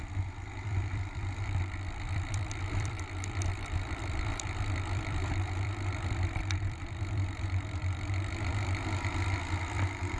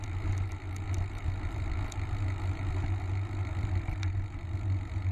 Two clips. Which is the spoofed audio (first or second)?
first